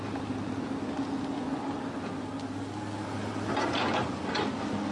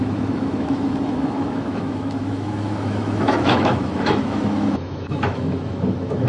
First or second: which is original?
first